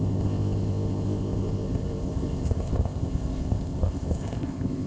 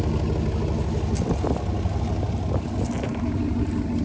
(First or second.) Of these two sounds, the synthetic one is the first